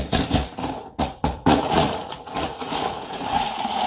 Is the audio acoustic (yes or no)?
no